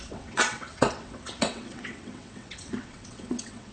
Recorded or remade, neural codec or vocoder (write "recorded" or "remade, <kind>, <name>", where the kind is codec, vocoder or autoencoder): remade, vocoder, WaveNeXt